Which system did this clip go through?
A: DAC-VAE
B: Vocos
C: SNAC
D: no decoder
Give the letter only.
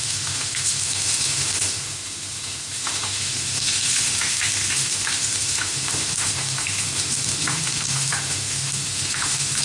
A